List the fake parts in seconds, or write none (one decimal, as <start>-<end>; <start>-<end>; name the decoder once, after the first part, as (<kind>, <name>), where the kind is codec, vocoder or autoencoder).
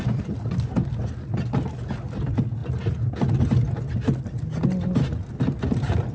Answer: none